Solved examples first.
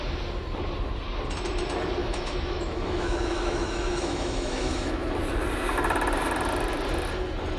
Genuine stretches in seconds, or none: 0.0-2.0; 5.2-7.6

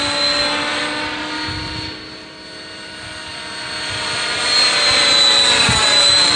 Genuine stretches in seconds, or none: 0.0-6.4